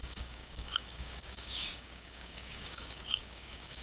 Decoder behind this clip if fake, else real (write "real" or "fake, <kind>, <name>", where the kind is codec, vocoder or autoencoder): fake, codec, DAC